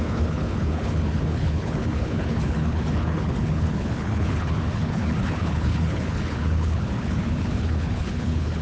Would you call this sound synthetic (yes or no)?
yes